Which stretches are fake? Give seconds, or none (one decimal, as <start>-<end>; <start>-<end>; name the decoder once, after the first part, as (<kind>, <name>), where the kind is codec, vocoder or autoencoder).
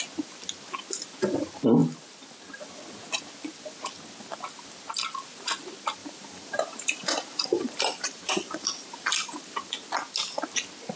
6.0-9.7 (vocoder, BigVGAN v2)